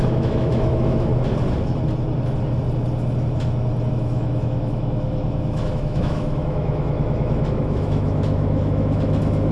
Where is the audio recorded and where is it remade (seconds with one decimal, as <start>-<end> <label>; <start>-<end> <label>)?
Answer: 0.0-1.1 remade; 1.1-3.9 recorded; 3.9-9.5 remade